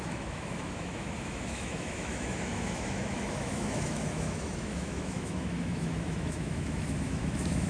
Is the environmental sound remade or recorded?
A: remade